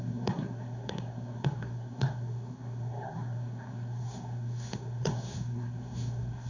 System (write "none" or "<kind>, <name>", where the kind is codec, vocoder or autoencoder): codec, SNAC